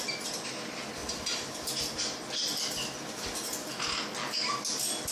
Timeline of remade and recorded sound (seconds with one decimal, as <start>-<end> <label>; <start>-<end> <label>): 0.0-1.0 recorded; 1.0-1.7 remade; 1.7-5.1 recorded